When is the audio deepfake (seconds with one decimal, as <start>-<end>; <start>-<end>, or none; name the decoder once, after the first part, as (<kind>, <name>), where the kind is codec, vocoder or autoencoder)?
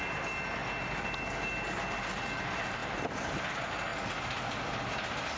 none